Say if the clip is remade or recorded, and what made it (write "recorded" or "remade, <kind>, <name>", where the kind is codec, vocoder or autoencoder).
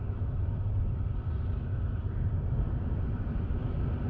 recorded